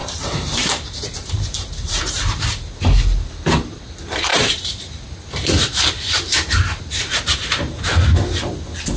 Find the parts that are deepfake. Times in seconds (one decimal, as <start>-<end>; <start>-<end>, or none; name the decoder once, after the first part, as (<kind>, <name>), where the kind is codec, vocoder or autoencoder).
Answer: 0.0-2.7 (vocoder, BigVGAN v2); 4.3-7.8